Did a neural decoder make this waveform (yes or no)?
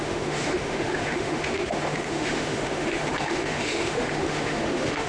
yes